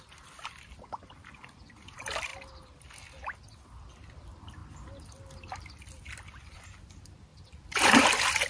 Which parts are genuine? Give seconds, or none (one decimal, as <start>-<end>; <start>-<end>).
2.3-4.1; 4.6-5.5